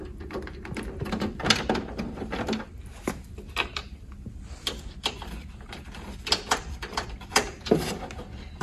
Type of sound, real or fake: real